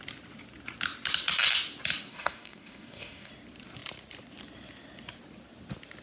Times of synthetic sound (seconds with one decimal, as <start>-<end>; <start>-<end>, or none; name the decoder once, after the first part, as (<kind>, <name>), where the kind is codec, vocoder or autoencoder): 2.1-3.3 (codec, DAC)